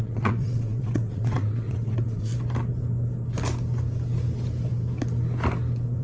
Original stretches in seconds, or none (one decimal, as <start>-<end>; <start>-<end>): 2.3-6.0